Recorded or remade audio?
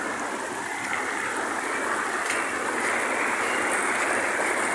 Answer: recorded